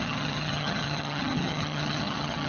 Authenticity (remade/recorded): remade